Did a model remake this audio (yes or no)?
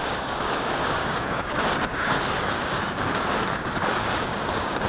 yes